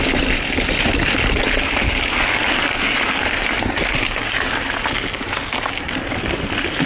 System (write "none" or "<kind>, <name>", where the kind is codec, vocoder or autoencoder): none